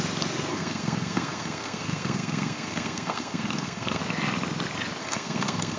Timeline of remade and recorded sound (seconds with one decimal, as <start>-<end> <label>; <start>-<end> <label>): 0.0-0.5 recorded; 0.5-4.0 remade; 4.0-5.0 recorded; 5.0-5.8 remade